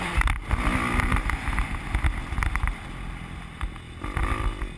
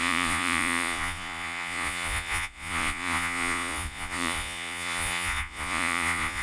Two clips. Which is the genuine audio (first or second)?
first